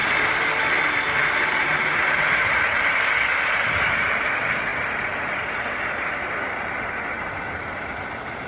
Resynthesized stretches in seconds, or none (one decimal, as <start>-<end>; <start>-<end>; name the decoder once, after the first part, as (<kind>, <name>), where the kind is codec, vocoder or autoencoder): 0.0-8.5 (vocoder, BigVGAN v2)